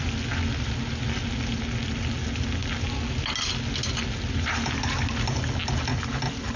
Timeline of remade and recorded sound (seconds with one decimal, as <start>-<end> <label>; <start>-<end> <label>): 0.0-6.6 recorded